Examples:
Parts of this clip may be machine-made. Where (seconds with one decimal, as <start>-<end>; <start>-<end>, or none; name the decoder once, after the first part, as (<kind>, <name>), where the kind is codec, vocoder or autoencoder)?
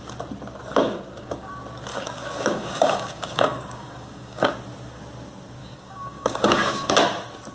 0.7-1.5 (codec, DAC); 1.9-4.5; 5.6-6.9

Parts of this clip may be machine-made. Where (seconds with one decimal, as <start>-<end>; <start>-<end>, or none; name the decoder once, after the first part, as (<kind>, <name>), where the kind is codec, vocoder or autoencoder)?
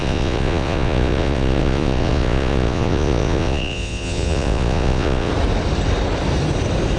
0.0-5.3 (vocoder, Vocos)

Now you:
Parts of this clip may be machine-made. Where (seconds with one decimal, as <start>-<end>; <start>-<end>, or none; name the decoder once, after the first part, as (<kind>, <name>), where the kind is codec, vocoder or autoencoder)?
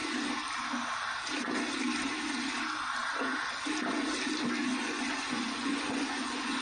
4.6-6.6 (vocoder, Vocos)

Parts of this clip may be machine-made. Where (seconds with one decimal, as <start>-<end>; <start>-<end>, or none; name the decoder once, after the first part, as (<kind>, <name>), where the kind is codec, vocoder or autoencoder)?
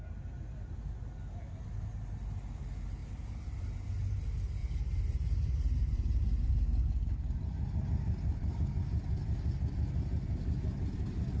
3.0-3.8 (vocoder, BigVGAN v2); 4.6-6.5; 8.3-8.8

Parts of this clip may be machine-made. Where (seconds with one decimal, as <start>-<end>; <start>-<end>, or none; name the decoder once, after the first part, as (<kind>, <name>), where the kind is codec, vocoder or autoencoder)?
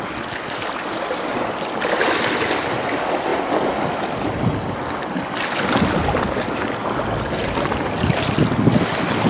none